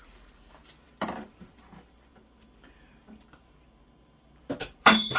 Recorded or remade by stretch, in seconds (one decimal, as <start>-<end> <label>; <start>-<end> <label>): 0.0-2.1 remade; 2.1-4.6 recorded; 4.6-5.2 remade